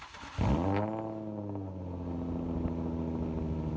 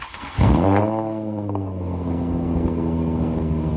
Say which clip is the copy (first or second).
second